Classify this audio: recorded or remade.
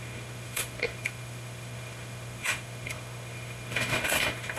remade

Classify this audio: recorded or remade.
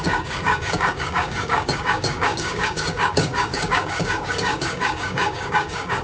remade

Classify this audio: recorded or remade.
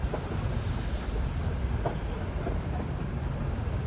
recorded